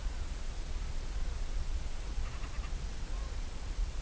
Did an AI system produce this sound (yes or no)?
yes